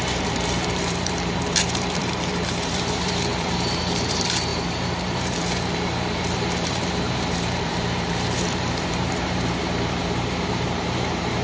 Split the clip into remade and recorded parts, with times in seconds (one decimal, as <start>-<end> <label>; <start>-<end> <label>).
0.0-11.4 remade